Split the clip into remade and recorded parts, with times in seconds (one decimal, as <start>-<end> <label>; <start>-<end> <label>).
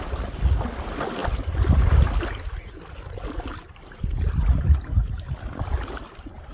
0.0-1.2 recorded; 1.2-2.1 remade; 2.1-3.5 recorded; 3.5-6.0 remade; 6.0-6.5 recorded